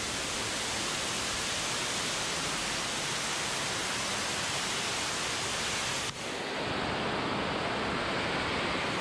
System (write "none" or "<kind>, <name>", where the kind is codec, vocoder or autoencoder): none